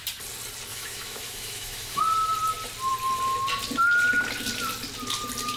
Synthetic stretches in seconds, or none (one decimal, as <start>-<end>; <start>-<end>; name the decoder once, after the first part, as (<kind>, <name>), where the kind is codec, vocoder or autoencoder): 0.7-2.0 (autoencoder, DAC-VAE)